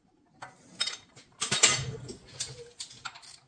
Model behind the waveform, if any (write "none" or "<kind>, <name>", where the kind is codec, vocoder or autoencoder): none